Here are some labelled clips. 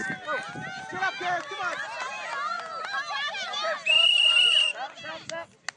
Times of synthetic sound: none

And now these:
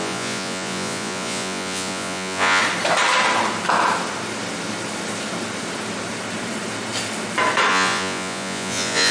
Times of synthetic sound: 0.0-2.6 (vocoder, Vocos); 7.7-9.1

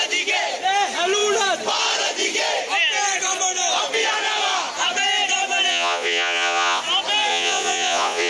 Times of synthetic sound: 5.7-6.8 (vocoder, Vocos); 7.3-8.3

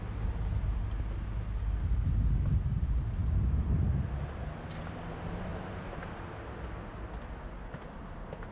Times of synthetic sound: none